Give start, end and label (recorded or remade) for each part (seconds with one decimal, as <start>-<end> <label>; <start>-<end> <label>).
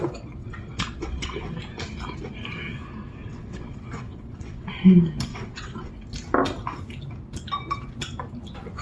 0.0-0.4 recorded; 0.4-1.5 remade; 1.5-3.2 recorded; 3.2-4.8 remade; 4.8-5.3 recorded; 5.3-5.9 remade; 5.9-8.8 recorded